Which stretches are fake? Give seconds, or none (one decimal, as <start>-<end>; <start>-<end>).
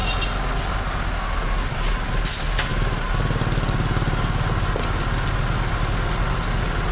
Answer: none